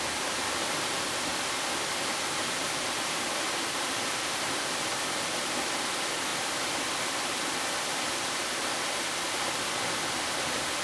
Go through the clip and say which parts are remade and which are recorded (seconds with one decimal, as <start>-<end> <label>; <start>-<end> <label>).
0.0-1.3 recorded; 1.3-4.5 remade; 4.5-6.3 recorded; 6.3-8.9 remade; 8.9-10.8 recorded